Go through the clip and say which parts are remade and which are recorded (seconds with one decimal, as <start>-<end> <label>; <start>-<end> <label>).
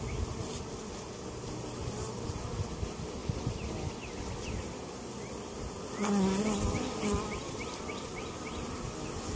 0.0-9.4 recorded